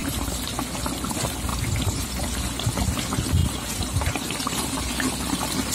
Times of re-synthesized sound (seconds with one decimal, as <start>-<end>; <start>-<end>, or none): 0.0-0.5; 1.5-2.1; 3.4-4.5